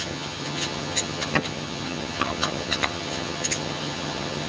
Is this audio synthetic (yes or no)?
yes